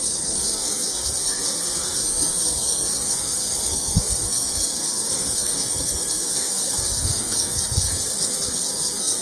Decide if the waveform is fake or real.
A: fake